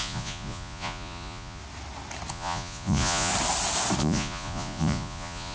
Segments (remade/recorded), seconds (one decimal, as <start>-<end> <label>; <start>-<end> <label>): 0.0-1.6 remade; 1.6-2.3 recorded; 2.3-3.3 remade; 3.3-4.0 recorded; 4.0-5.5 remade